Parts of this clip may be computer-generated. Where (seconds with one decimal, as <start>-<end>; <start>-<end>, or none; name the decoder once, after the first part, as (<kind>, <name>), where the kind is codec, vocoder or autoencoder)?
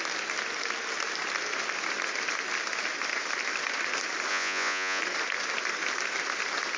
4.3-5.0 (vocoder, Vocos)